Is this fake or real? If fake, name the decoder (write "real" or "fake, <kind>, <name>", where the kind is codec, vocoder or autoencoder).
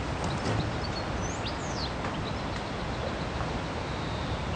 real